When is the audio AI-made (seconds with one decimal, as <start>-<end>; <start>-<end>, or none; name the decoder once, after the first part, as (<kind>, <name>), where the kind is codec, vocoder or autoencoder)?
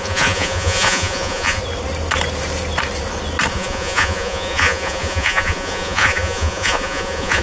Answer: 0.0-1.6 (vocoder, Vocos); 3.5-7.4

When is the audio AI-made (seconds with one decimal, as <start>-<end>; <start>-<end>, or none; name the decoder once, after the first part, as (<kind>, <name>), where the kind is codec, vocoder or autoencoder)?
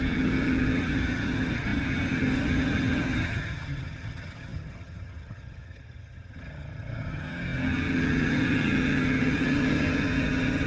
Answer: 0.0-10.7 (vocoder, HiFi-GAN)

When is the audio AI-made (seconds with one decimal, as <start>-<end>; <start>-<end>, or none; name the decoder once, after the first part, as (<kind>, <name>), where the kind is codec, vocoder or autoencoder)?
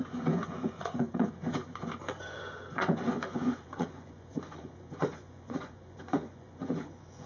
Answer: 0.0-7.3 (vocoder, Vocos)